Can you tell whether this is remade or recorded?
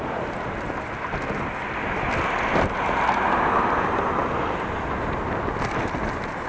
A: recorded